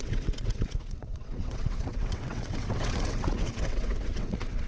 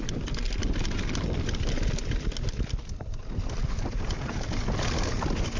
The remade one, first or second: first